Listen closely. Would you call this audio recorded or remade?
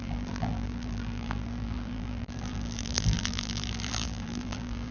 remade